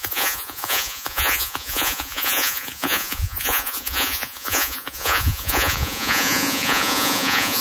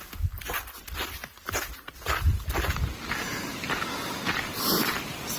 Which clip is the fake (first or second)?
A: first